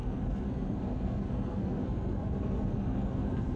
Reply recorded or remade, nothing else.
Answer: remade